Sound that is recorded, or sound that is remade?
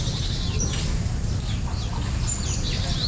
recorded